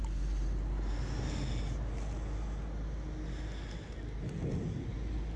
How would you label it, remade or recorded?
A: recorded